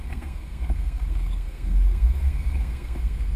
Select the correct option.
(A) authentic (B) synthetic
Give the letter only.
B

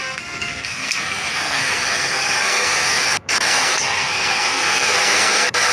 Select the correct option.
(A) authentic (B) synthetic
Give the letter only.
B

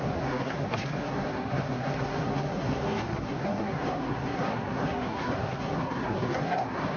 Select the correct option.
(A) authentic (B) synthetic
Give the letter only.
B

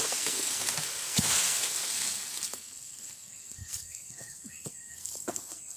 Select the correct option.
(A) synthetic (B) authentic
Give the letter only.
A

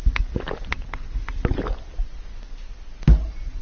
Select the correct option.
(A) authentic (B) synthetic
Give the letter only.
A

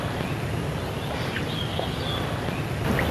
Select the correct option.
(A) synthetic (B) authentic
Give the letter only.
B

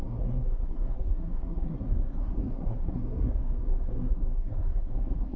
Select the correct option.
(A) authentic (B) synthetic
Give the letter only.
B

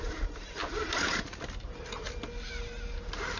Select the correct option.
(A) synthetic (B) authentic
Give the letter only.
B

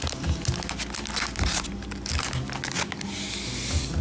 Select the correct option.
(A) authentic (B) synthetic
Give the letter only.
A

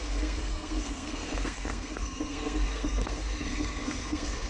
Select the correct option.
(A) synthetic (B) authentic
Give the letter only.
A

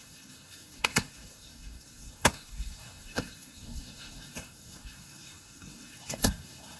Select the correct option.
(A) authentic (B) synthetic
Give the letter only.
B